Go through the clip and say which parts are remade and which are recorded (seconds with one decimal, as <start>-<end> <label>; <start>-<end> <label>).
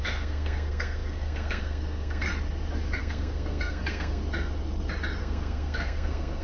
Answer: 0.0-2.3 remade; 2.3-3.0 recorded; 3.0-4.2 remade; 4.2-5.2 recorded; 5.2-6.4 remade